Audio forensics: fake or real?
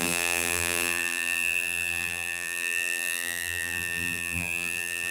fake